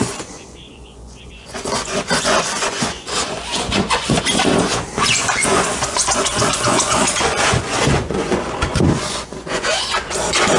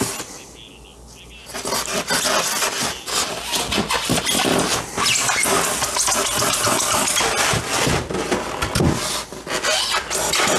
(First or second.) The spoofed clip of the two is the first